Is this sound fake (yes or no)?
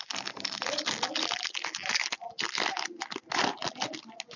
no